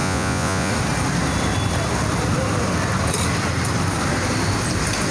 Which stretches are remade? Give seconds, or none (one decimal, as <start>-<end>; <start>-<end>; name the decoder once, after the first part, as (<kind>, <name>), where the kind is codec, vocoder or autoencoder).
0.0-0.7 (vocoder, Vocos)